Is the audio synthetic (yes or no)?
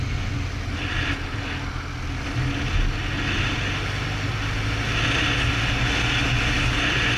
no